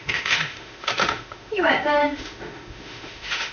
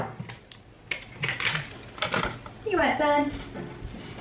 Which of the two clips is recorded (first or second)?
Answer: second